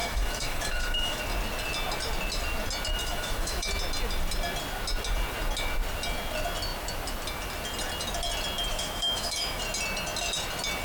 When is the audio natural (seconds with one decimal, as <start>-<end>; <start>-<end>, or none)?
1.2-3.0; 3.7-8.7; 9.6-10.8